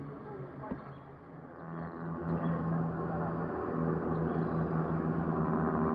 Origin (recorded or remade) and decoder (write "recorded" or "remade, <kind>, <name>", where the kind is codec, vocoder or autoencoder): recorded